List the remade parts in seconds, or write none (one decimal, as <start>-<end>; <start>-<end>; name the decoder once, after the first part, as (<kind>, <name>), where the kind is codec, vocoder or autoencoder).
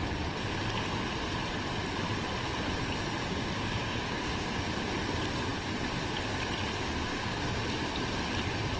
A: 3.2-4.7 (codec, DAC); 7.1-7.6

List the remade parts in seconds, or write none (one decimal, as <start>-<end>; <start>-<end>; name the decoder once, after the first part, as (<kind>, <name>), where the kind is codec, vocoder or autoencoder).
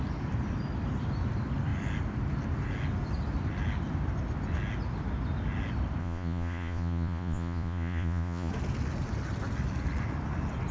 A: 6.0-8.5 (vocoder, Vocos)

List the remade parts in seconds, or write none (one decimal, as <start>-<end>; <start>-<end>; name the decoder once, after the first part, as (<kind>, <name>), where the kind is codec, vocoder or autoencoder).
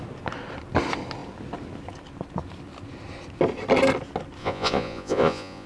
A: 4.4-5.7 (vocoder, Vocos)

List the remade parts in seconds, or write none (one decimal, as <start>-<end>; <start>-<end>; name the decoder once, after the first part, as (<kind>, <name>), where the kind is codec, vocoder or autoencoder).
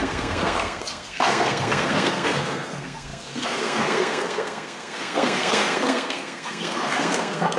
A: 0.0-7.6 (codec, SNAC)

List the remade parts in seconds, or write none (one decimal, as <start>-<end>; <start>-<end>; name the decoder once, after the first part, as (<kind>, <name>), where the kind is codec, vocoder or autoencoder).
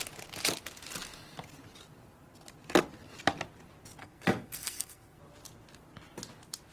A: 4.0-5.2 (codec, SNAC)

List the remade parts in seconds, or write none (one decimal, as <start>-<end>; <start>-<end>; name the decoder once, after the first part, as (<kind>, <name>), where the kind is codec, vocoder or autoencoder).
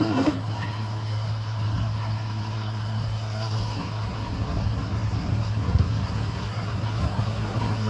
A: 0.0-7.9 (codec, SNAC)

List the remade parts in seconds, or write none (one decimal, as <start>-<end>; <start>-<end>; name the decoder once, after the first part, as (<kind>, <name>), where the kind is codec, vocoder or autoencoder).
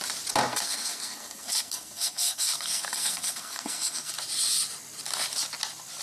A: 0.5-4.1 (codec, SNAC)